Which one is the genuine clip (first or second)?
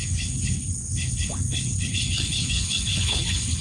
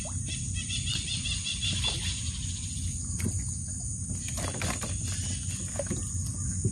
second